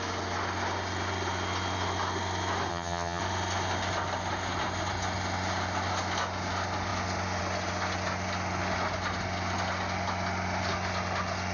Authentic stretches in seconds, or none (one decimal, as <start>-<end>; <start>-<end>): 0.0-2.7; 3.2-11.5